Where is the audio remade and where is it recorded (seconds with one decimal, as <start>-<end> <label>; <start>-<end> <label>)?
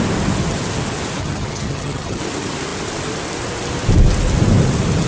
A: 0.0-1.2 recorded; 1.2-2.2 remade; 2.2-5.1 recorded